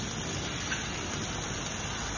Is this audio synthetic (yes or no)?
no